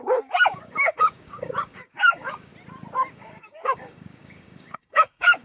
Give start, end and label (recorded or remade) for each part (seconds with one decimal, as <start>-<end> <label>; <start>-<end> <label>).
0.0-2.5 remade; 2.5-3.1 recorded; 3.1-5.4 remade

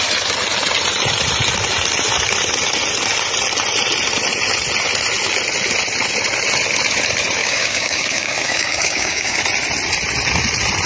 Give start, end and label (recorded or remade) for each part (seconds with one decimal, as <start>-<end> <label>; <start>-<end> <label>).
0.0-7.4 recorded; 7.4-9.4 remade; 9.4-10.9 recorded

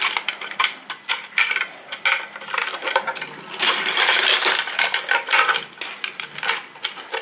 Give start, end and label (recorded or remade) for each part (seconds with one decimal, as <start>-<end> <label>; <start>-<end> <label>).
0.0-7.2 recorded